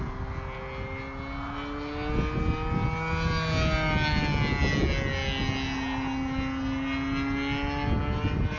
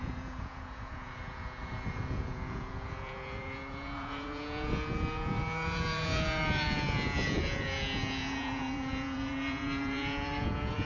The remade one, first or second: second